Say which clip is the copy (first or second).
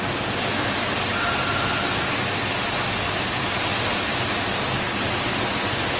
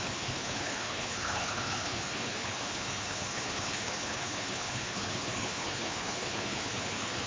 second